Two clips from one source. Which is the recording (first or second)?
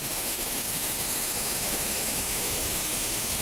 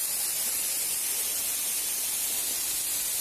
second